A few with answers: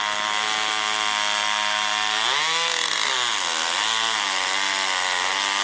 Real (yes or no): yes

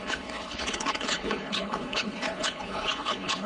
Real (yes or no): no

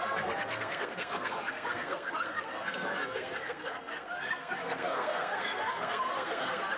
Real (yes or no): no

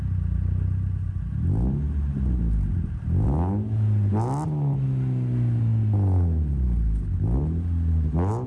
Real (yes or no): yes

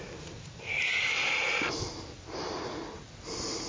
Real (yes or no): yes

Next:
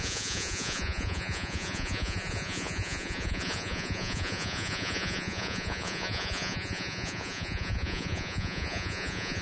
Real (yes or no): no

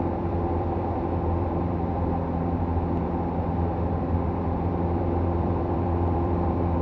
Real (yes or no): no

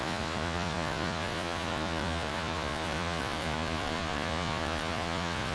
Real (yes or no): no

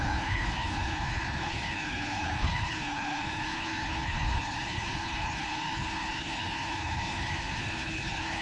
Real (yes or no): no